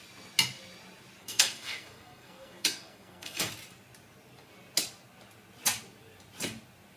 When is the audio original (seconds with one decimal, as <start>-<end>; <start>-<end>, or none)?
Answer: 0.0-1.2; 3.5-7.0